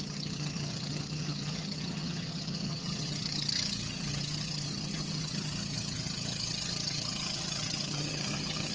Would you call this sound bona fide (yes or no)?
no